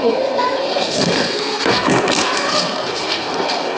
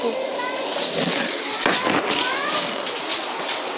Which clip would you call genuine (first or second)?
second